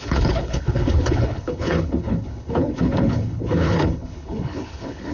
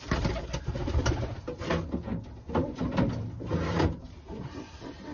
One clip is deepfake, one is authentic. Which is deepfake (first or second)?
first